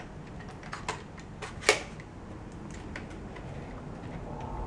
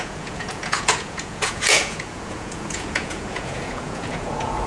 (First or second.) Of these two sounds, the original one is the first